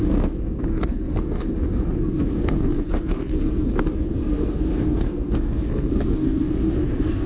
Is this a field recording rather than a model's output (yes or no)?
no